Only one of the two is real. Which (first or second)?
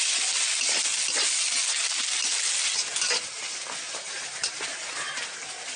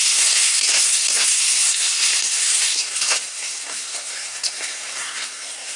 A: first